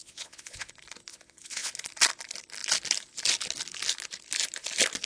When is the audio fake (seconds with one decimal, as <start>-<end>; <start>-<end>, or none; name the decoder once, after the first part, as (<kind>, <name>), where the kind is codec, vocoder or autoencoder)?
0.0-0.7 (vocoder, Vocos); 1.1-1.7